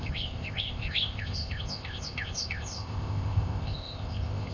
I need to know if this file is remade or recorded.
remade